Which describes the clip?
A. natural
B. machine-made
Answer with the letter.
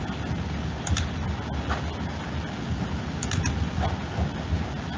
A